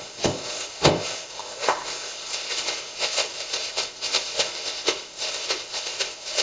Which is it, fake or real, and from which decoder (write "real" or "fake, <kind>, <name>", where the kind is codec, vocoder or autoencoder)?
fake, codec, ZipCodec